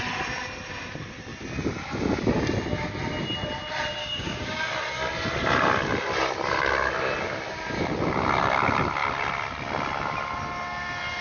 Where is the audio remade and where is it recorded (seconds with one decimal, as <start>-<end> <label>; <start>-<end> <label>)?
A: 0.0-4.0 recorded; 4.0-4.6 remade; 4.6-11.2 recorded